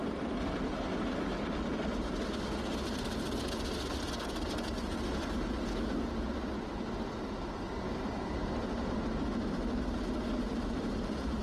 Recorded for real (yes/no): yes